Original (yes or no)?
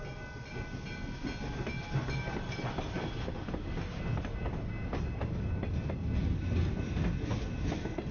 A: yes